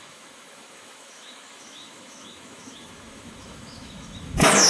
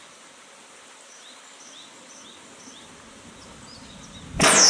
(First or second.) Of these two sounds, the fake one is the first